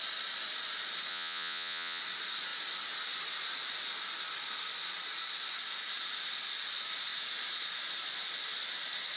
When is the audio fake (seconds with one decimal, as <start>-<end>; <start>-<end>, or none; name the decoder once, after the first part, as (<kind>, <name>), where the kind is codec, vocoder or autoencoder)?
1.1-2.0 (vocoder, Vocos)